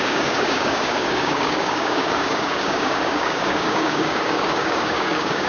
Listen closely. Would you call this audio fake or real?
fake